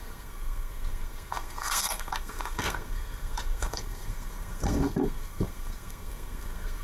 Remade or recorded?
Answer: remade